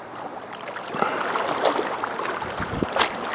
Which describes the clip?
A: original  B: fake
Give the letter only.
A